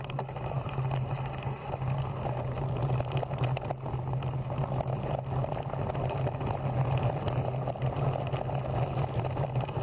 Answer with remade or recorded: recorded